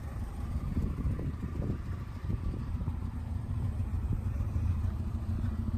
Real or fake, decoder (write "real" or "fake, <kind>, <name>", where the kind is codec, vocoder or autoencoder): fake, vocoder, BigVGAN v2